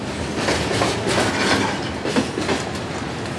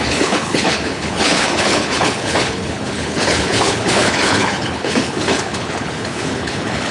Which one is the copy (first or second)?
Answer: second